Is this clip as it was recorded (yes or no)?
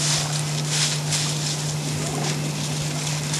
yes